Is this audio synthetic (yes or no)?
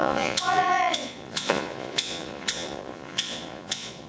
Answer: yes